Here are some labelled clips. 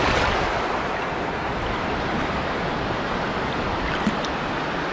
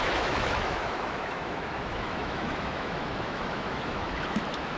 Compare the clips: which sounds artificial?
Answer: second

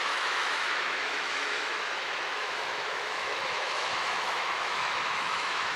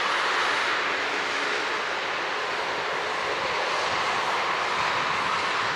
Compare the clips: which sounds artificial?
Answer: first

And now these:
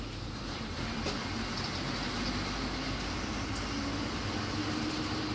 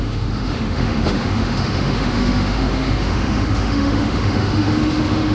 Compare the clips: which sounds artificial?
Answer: second